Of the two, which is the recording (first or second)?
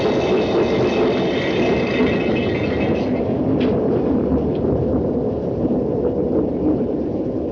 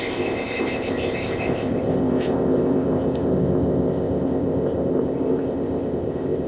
first